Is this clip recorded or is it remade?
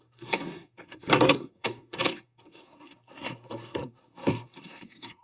remade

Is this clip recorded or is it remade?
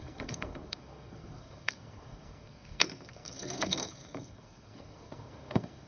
remade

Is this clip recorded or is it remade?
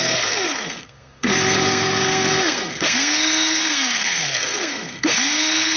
remade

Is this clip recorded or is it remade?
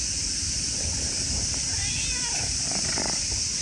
recorded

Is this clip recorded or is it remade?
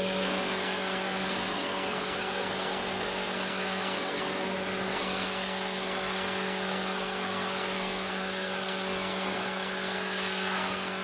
remade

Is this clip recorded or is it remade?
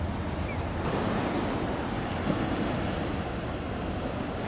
recorded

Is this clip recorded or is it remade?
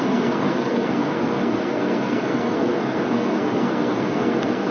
remade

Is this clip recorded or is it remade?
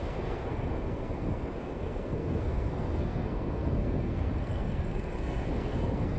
remade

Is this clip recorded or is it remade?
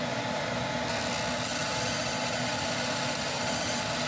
recorded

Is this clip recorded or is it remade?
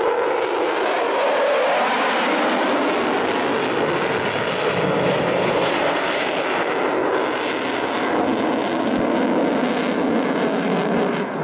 recorded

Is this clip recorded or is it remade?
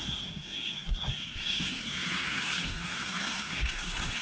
remade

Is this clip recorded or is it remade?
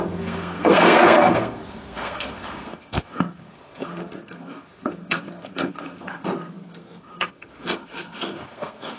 remade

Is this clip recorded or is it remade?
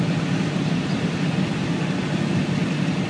recorded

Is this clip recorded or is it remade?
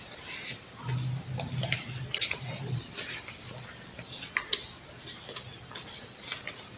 recorded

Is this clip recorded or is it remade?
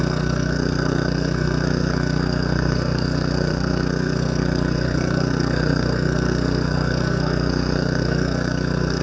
remade